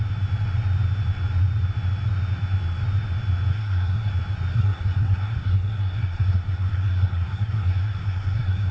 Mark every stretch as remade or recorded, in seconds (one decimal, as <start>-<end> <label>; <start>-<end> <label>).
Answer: 0.0-3.5 recorded; 3.5-4.1 remade; 4.1-4.5 recorded; 4.5-8.7 remade